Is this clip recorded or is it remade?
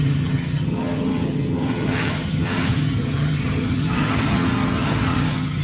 remade